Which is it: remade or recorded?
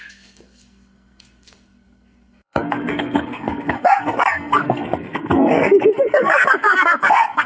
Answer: remade